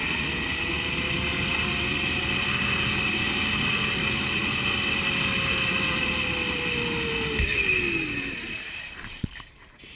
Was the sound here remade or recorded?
recorded